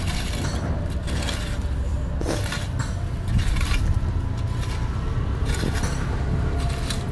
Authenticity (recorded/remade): recorded